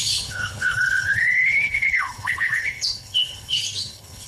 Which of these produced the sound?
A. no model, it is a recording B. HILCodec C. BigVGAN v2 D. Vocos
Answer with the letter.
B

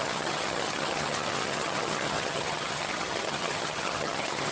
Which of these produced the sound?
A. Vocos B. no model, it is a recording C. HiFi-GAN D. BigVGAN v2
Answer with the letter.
C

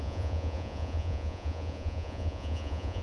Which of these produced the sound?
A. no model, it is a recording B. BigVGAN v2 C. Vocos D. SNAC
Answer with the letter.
C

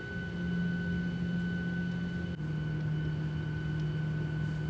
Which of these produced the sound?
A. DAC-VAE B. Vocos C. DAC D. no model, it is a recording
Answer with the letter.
D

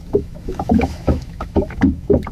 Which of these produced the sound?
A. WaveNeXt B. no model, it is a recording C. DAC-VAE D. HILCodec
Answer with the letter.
C